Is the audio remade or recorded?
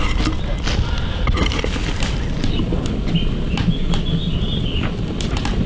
recorded